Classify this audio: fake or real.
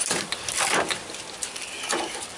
real